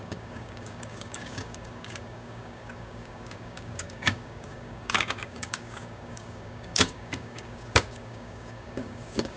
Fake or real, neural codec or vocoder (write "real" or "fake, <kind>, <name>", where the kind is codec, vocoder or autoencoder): fake, codec, DAC